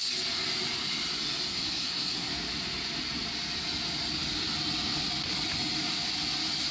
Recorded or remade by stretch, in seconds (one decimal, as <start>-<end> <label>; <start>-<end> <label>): 0.0-1.5 recorded; 1.5-2.3 remade; 2.3-6.7 recorded

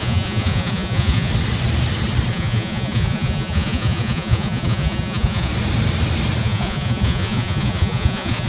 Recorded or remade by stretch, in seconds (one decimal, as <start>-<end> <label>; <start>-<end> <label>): 0.0-1.3 remade; 1.3-2.3 recorded; 2.3-5.5 remade; 5.5-6.4 recorded; 6.4-8.5 remade

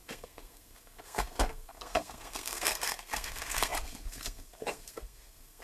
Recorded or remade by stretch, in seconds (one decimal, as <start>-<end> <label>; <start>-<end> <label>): 0.0-5.6 remade